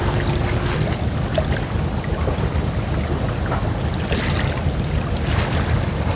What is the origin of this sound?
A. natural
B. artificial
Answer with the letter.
A